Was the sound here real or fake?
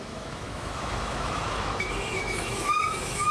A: fake